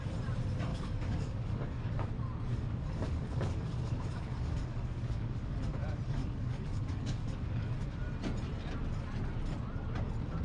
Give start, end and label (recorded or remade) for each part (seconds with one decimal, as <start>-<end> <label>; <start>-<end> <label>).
0.0-0.7 recorded; 0.7-2.1 remade; 2.1-2.5 recorded; 2.5-5.6 remade; 5.6-6.2 recorded; 6.2-7.7 remade; 7.7-10.4 recorded